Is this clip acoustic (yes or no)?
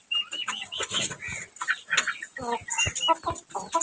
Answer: yes